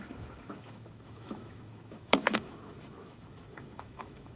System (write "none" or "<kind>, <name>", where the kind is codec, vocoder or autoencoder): autoencoder, DAC-VAE